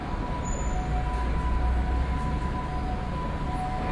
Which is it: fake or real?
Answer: real